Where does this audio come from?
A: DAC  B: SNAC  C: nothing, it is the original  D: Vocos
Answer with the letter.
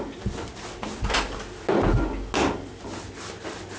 C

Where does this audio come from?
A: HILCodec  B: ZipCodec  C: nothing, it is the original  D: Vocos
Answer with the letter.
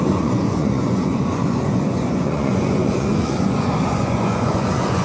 D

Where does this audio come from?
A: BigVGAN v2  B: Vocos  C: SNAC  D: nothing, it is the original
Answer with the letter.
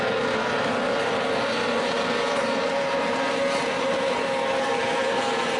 A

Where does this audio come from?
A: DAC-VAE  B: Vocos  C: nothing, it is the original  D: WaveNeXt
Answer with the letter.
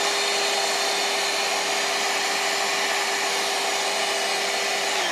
C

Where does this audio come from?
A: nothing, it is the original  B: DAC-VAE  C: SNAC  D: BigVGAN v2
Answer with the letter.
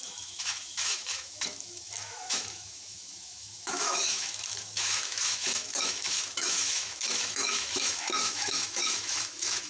B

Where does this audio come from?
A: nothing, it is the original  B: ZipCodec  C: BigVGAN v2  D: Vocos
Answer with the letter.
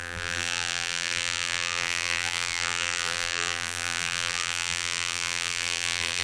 C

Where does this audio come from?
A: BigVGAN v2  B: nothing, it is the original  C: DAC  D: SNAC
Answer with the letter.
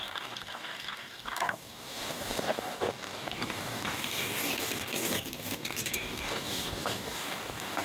C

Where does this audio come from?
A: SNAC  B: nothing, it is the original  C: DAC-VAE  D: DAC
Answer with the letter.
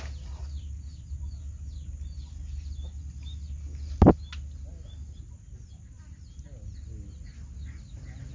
B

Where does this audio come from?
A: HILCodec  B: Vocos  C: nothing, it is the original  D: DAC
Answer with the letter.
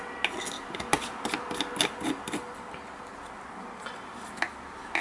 C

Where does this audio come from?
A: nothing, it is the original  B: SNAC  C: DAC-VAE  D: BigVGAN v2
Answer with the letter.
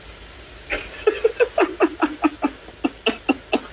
A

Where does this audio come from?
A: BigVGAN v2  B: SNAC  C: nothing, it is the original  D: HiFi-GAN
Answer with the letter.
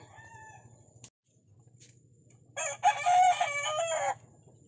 C